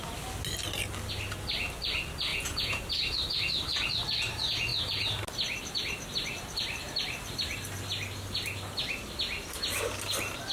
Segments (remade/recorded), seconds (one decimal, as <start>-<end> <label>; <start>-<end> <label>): 0.0-2.3 recorded; 2.3-2.8 remade; 2.8-10.5 recorded